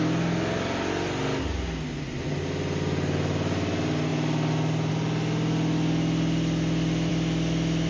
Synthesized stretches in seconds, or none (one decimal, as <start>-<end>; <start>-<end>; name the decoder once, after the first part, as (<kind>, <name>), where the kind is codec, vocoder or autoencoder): none